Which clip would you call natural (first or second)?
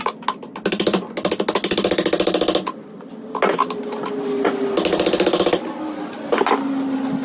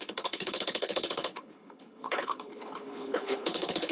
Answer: first